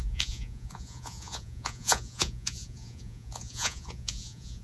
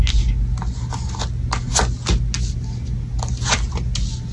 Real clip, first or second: second